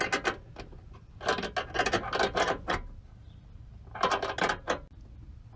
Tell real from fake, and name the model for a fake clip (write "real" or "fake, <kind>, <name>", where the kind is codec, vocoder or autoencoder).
real